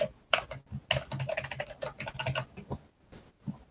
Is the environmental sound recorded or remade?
recorded